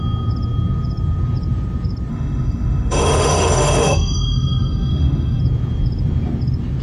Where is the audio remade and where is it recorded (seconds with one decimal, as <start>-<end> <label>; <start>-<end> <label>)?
0.0-2.1 recorded; 2.1-5.4 remade; 5.4-6.8 recorded